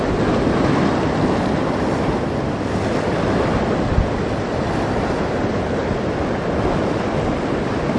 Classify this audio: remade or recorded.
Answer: recorded